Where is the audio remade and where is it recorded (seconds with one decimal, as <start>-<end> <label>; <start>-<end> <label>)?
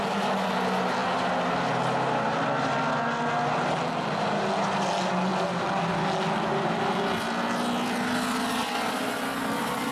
0.0-9.9 recorded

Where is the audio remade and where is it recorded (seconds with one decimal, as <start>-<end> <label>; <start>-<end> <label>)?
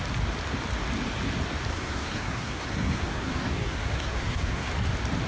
0.0-1.7 recorded; 1.7-4.7 remade; 4.7-5.3 recorded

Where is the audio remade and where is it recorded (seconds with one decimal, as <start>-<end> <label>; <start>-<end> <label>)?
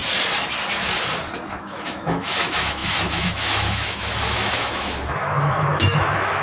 0.0-1.5 recorded; 1.5-6.4 remade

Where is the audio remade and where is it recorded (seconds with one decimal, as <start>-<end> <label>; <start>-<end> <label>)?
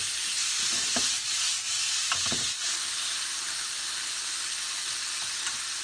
0.0-5.8 recorded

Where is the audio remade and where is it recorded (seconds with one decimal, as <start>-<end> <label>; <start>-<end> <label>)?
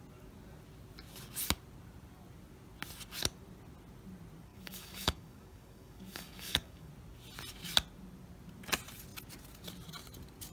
0.0-4.5 recorded; 4.5-6.9 remade; 6.9-10.5 recorded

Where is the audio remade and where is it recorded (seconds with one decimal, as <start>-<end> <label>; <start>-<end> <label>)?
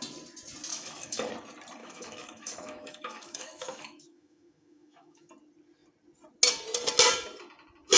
0.0-0.7 recorded; 0.7-1.3 remade; 1.3-1.8 recorded; 1.8-5.3 remade; 5.3-8.0 recorded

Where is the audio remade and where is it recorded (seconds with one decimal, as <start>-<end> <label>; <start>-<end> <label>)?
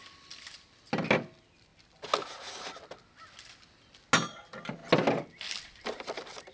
0.0-6.5 recorded